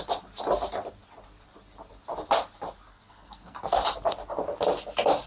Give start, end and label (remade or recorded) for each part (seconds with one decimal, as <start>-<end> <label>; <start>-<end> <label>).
0.0-2.9 recorded; 2.9-3.8 remade; 3.8-5.3 recorded